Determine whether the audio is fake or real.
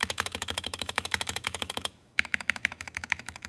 fake